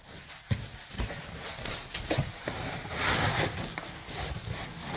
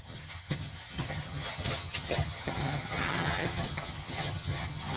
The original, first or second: first